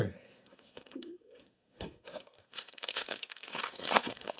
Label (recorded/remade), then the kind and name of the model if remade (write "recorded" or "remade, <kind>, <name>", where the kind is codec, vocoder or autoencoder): remade, codec, SNAC